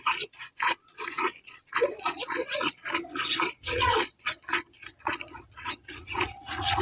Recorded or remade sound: remade